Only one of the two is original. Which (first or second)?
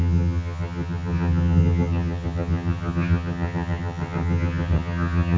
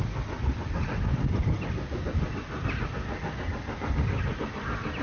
second